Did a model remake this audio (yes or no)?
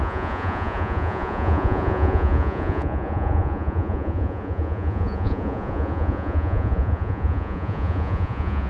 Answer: yes